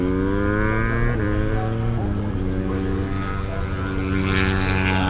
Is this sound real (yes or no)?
yes